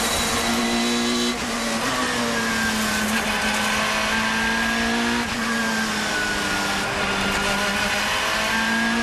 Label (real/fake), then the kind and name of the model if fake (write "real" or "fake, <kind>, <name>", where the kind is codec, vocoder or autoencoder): real